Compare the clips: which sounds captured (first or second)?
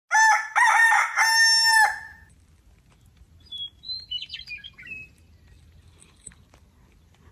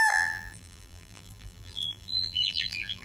first